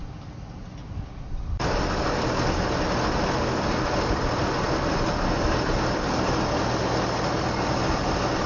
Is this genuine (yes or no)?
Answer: yes